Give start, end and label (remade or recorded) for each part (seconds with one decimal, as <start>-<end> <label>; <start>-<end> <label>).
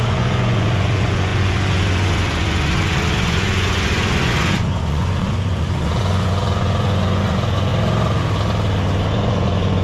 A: 0.0-7.7 remade; 7.7-9.1 recorded; 9.1-9.8 remade